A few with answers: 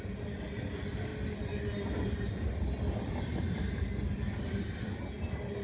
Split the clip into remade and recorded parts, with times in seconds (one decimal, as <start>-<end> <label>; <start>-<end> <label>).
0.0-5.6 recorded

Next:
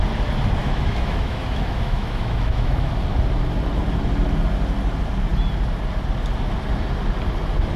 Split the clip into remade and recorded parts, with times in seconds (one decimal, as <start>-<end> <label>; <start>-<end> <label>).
0.0-0.6 recorded; 0.6-2.9 remade; 2.9-7.8 recorded

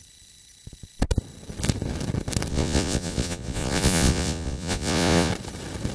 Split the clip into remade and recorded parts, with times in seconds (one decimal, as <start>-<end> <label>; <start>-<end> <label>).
0.0-2.5 recorded; 2.5-5.3 remade; 5.3-5.9 recorded